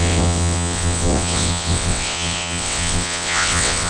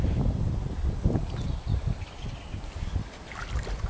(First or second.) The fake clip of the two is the first